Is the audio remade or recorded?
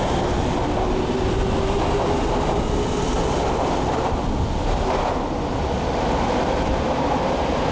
recorded